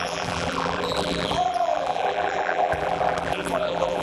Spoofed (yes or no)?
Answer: yes